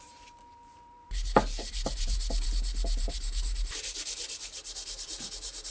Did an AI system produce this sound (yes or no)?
yes